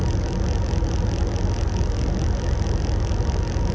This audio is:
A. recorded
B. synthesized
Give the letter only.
A